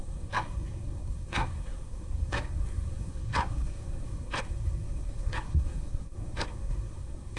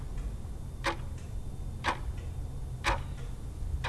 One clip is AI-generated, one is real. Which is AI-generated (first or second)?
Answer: first